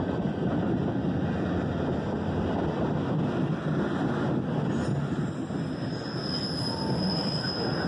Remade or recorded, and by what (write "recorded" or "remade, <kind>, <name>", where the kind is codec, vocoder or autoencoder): recorded